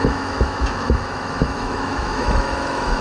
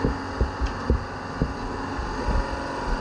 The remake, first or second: first